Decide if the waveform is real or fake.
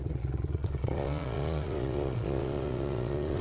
fake